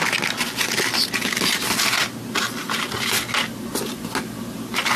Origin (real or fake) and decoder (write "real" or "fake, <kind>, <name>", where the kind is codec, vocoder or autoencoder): real